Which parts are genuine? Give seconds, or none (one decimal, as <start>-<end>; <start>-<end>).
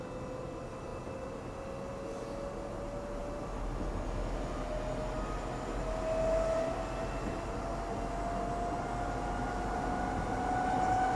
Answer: 0.0-11.2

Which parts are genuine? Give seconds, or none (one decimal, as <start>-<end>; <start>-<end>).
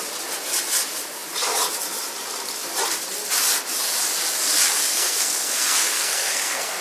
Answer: 0.0-4.8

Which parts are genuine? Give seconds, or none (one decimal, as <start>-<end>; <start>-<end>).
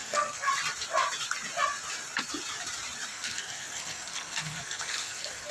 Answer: 0.5-3.1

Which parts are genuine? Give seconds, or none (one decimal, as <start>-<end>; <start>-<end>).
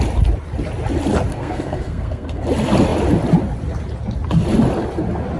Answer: 0.0-1.3; 2.4-5.4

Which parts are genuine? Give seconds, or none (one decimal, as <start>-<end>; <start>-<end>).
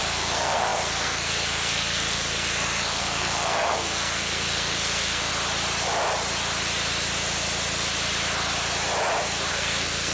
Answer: 5.3-9.5